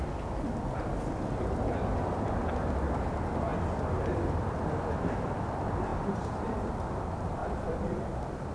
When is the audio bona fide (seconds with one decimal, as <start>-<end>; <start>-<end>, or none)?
0.0-3.5; 5.2-5.9; 6.4-7.4; 8.0-8.5